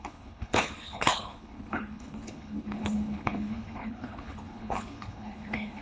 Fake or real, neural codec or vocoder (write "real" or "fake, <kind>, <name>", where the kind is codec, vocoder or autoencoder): fake, codec, HILCodec